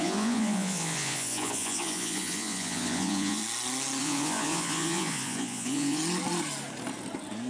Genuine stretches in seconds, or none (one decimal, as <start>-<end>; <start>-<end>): 3.4-4.0; 6.0-7.5